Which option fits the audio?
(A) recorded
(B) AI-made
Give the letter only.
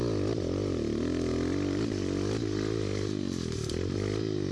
A